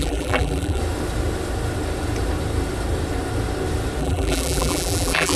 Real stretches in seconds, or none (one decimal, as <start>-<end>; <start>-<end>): 0.8-4.0